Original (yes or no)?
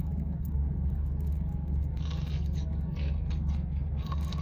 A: no